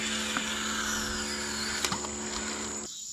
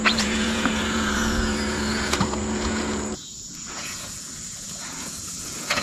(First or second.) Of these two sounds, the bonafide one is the first